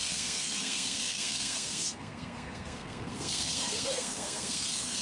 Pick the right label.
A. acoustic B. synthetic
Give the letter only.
B